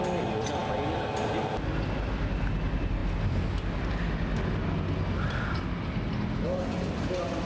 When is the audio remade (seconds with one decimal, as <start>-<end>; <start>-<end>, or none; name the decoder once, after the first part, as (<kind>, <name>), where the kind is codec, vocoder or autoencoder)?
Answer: none